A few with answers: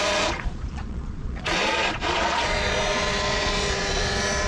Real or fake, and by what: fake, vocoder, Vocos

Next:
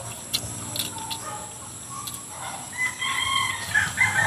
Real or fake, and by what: real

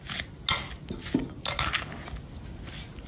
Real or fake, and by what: real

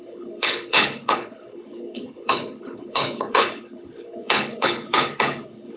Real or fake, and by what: fake, codec, HILCodec